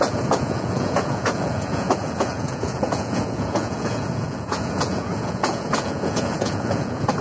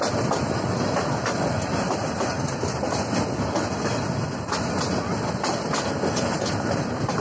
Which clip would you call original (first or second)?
second